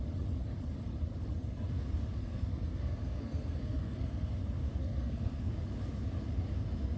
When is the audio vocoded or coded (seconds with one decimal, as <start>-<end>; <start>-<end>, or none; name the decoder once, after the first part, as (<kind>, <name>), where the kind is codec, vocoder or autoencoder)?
2.2-4.3 (codec, SNAC); 4.8-5.5

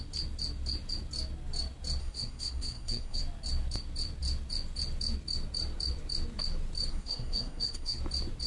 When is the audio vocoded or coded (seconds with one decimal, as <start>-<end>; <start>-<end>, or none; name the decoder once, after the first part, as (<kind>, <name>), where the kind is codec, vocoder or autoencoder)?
2.0-3.2 (codec, SNAC); 6.9-8.0

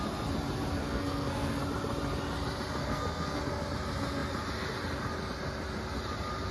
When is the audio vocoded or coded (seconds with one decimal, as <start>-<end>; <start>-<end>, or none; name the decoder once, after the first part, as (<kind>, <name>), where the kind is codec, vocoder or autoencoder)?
0.8-1.6 (codec, SNAC); 2.8-3.4

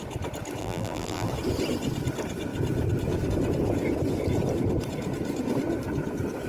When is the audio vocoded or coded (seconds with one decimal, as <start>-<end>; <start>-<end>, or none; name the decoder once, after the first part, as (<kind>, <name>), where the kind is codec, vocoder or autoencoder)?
0.6-1.3 (vocoder, BigVGAN v2)

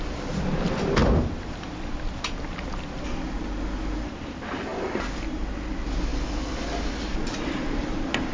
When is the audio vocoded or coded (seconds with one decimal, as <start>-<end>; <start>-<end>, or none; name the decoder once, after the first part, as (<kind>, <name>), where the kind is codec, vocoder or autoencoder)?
none

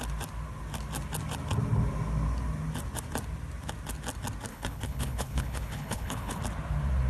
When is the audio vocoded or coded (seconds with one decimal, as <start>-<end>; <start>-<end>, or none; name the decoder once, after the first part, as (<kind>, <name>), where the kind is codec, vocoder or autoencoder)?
4.5-6.4 (codec, HILCodec)

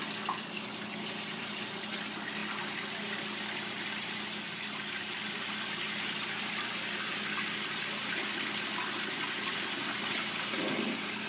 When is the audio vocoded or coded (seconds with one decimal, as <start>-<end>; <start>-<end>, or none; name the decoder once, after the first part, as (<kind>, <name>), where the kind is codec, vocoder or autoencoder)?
none

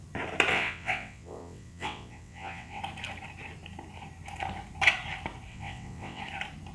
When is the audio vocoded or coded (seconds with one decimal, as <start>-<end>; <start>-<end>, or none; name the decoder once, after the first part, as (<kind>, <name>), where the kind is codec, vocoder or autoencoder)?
0.5-2.8 (vocoder, WaveNeXt); 5.5-6.2